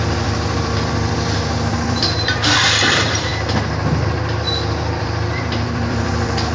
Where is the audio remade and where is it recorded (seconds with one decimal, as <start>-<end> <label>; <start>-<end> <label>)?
0.0-3.3 remade; 3.3-5.0 recorded; 5.0-6.5 remade